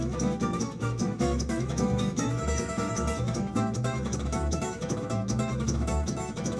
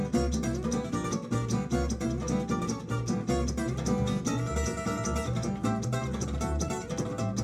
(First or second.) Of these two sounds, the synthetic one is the first